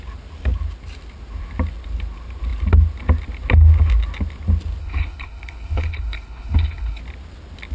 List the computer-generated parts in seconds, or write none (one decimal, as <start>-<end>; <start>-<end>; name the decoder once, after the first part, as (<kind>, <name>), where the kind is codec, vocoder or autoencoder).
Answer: 4.8-7.0 (codec, HILCodec)